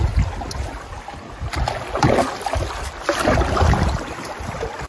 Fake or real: real